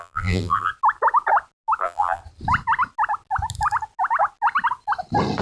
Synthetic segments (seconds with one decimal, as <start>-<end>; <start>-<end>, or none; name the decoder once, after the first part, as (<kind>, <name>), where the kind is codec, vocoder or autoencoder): 0.0-0.7 (vocoder, BigVGAN v2); 1.8-2.2